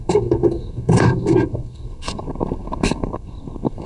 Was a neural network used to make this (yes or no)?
yes